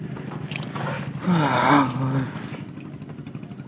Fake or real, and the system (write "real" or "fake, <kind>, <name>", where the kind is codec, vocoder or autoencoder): real